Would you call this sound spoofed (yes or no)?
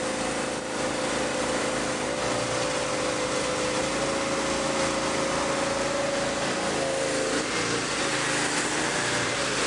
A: no